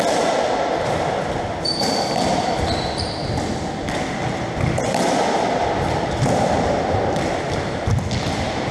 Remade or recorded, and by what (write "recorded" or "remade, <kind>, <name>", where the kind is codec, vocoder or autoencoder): recorded